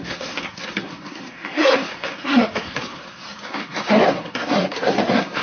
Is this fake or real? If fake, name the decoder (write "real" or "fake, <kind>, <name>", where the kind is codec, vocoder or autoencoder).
fake, codec, SNAC